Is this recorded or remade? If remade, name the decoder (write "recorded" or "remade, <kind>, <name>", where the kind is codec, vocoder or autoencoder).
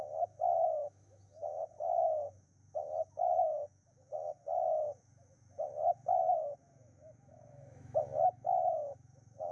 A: remade, autoencoder, DAC-VAE